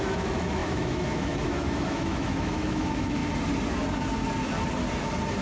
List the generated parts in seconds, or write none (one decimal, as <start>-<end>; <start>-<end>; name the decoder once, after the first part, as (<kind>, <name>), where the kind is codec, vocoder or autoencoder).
0.0-3.2 (autoencoder, DAC-VAE)